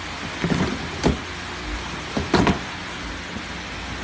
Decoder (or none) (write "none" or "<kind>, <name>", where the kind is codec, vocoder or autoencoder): none